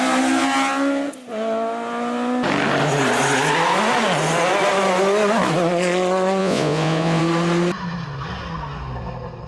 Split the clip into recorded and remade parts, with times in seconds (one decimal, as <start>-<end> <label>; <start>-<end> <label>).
0.0-6.4 recorded; 6.4-7.2 remade; 7.2-9.5 recorded

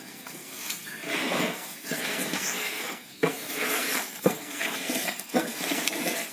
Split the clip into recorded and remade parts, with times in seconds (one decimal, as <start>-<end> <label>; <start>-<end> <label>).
0.0-6.3 remade

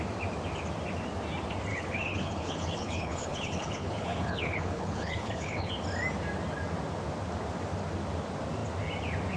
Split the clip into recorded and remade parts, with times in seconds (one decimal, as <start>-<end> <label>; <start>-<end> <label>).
0.0-1.7 recorded; 1.7-5.7 remade; 5.7-9.4 recorded

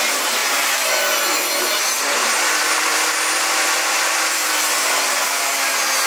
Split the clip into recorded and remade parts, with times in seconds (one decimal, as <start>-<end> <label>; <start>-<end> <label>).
0.0-6.1 recorded

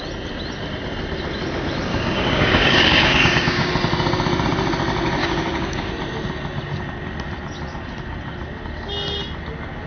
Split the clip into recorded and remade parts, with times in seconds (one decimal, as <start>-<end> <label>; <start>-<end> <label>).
0.0-1.9 recorded; 1.9-3.7 remade; 3.7-5.2 recorded; 5.2-5.9 remade; 5.9-9.9 recorded

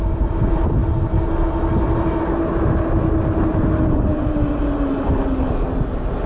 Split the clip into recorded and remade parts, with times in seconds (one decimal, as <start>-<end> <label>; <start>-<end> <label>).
0.0-6.3 recorded